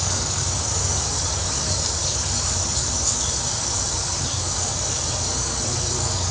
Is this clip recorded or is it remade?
remade